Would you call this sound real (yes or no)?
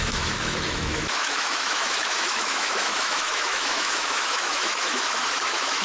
no